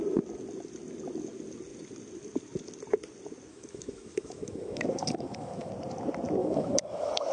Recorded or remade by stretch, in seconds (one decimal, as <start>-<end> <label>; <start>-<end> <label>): 0.0-3.5 recorded; 3.5-5.7 remade; 5.7-6.4 recorded; 6.4-7.3 remade